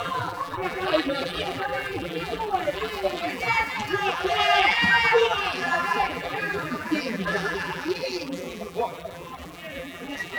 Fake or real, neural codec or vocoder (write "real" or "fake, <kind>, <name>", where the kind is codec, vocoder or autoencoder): fake, vocoder, BigVGAN v2